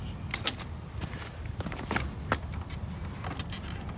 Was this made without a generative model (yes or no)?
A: yes